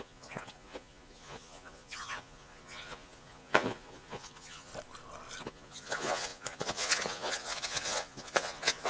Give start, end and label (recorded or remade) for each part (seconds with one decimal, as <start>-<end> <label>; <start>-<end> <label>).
0.0-4.7 remade; 4.7-5.4 recorded; 5.4-8.9 remade